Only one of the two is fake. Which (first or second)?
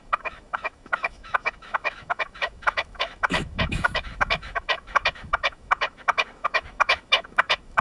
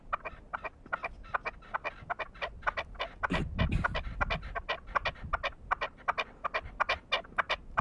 first